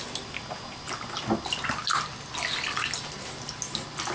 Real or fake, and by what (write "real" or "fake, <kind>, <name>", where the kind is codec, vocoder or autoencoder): real